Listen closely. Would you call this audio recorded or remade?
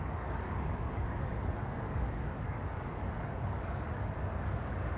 remade